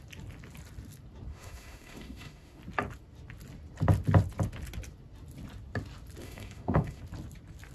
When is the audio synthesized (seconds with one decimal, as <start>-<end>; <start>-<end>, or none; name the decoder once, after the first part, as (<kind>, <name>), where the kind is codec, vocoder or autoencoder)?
1.3-2.6 (autoencoder, DAC-VAE); 6.2-7.0